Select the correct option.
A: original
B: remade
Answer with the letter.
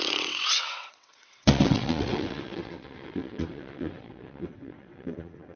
B